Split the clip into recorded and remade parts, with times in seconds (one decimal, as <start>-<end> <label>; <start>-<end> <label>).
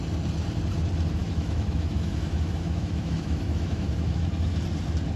0.0-1.2 recorded; 1.2-4.3 remade; 4.3-5.2 recorded